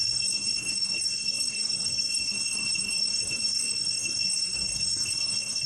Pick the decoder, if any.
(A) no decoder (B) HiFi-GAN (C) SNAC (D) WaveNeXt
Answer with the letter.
C